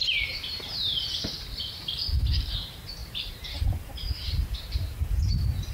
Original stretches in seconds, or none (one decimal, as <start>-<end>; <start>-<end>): 0.0-0.5; 1.0-3.0; 3.6-4.2; 5.0-5.7